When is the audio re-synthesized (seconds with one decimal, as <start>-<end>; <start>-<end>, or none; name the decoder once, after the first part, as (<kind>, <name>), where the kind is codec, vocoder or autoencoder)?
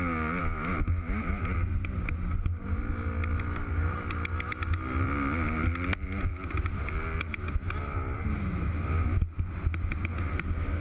0.4-1.4 (autoencoder, DAC-VAE)